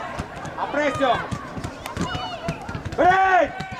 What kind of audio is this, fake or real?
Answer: real